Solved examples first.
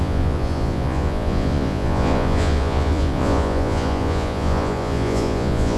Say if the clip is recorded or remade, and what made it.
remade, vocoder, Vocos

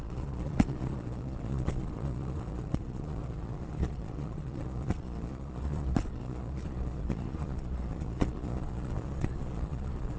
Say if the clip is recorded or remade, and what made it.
remade, vocoder, Vocos